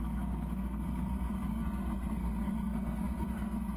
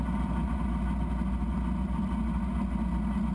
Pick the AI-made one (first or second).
first